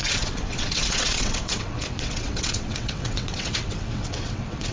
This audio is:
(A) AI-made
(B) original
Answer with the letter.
A